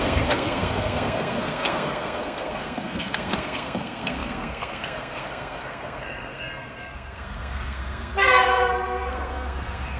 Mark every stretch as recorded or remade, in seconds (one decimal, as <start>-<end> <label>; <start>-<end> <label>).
0.0-10.0 remade